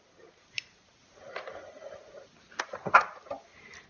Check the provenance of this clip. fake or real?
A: real